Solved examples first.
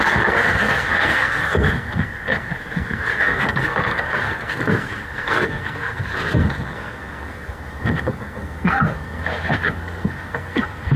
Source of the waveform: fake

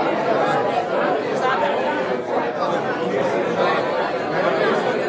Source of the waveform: real